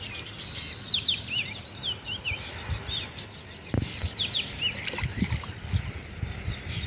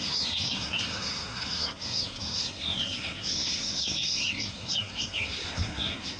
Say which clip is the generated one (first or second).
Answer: second